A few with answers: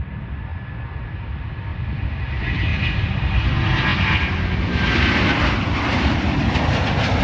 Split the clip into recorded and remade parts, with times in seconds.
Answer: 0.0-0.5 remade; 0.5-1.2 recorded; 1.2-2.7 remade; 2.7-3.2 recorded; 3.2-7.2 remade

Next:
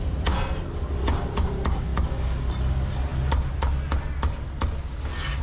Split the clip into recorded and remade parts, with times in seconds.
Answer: 0.0-5.4 recorded

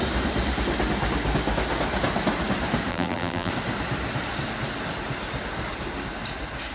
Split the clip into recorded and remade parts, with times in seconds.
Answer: 0.0-2.9 recorded; 2.9-3.5 remade; 3.5-6.7 recorded